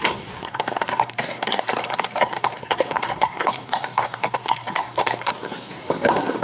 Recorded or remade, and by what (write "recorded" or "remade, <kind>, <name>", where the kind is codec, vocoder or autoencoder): remade, codec, SNAC